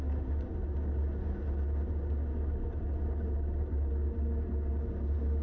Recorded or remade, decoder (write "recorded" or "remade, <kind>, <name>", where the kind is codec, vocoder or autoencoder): recorded